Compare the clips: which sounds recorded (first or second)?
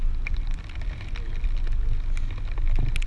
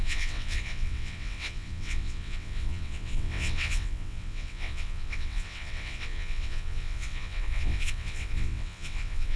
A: first